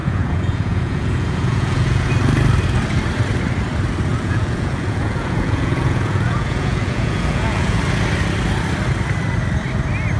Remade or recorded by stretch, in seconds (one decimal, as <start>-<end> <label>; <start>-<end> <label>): 0.0-2.1 remade; 2.1-4.1 recorded; 4.1-7.8 remade; 7.8-10.2 recorded